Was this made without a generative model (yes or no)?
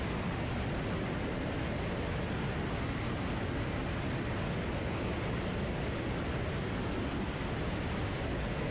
yes